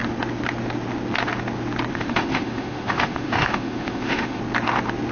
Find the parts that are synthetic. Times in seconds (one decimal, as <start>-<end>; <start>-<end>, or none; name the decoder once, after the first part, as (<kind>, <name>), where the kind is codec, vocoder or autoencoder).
1.9-4.4 (autoencoder, DAC-VAE)

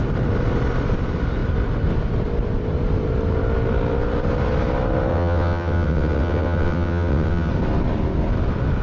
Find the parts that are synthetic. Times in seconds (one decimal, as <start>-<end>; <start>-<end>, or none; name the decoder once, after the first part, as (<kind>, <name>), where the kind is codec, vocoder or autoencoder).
5.1-7.5 (vocoder, WaveNeXt)

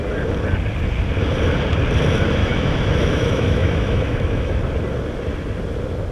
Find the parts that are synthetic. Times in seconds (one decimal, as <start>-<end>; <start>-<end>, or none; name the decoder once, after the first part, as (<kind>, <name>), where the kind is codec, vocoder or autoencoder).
2.4-4.6 (autoencoder, DAC-VAE)

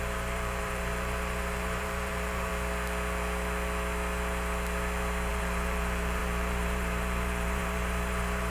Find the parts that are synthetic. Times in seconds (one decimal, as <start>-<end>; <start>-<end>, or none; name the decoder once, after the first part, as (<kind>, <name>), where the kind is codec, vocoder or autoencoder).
0.0-2.5 (vocoder, BigVGAN v2); 5.3-8.5

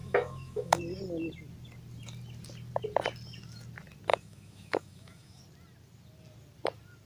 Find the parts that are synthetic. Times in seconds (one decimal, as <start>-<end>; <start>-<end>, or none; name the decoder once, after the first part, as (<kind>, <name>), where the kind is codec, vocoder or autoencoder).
0.0-0.8 (autoencoder, DAC-VAE); 4.1-5.4

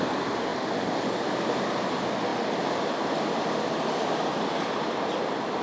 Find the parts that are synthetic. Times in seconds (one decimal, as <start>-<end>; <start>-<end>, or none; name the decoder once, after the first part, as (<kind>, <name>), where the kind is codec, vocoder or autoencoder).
none